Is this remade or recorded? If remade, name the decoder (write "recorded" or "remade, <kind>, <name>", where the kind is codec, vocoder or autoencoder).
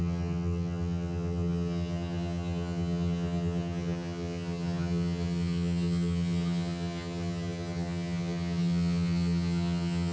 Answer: remade, vocoder, HiFi-GAN